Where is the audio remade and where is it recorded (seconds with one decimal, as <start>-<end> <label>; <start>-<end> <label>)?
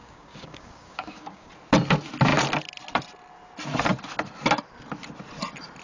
0.0-1.5 remade; 1.5-5.8 recorded